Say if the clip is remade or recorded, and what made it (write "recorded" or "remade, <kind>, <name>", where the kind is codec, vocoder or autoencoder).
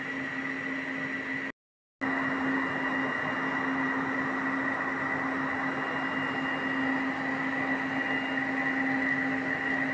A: recorded